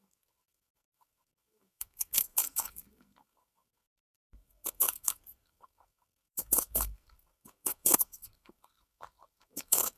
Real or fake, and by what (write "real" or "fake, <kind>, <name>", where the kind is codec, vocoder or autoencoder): fake, codec, SNAC